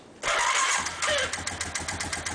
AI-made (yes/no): no